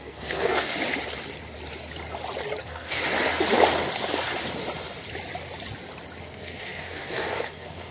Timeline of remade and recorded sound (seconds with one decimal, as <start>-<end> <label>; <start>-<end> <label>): 0.0-0.7 remade; 0.7-2.6 recorded; 2.6-3.0 remade; 3.0-6.2 recorded; 6.2-7.9 remade